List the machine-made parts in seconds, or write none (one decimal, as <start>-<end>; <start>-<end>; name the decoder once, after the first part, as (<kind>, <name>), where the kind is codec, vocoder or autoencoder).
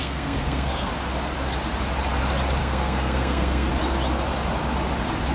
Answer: 0.0-0.9 (codec, SNAC); 2.6-3.7